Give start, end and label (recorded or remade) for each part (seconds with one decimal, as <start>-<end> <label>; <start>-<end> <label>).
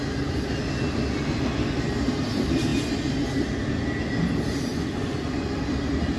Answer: 0.0-4.7 recorded; 4.7-5.5 remade; 5.5-6.2 recorded